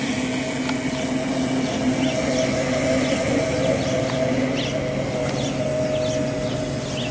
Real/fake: real